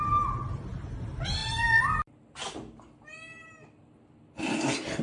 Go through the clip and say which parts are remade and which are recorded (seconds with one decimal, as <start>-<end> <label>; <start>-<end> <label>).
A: 0.0-5.0 recorded